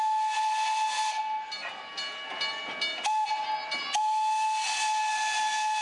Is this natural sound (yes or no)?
yes